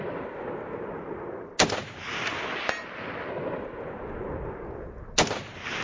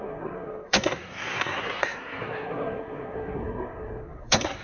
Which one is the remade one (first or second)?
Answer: second